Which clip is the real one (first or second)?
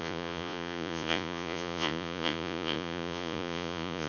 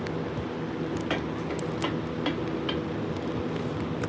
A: second